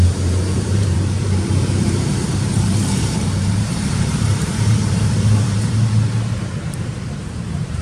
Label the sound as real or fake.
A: fake